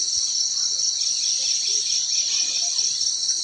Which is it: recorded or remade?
recorded